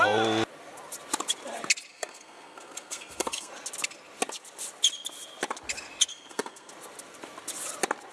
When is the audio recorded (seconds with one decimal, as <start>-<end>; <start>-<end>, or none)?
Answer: 0.0-1.9; 3.5-6.1; 6.7-8.1